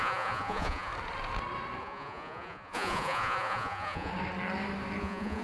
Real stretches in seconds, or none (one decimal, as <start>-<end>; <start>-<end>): 0.9-1.8; 4.1-5.0